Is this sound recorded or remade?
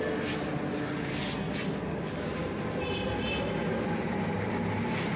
recorded